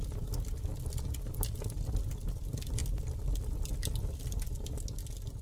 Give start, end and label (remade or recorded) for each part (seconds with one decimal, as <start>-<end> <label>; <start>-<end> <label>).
0.0-5.4 recorded

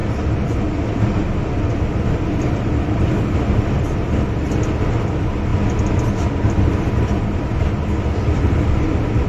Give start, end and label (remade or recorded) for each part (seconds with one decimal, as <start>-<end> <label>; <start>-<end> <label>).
0.0-9.3 recorded